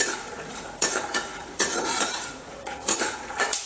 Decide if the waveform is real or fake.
fake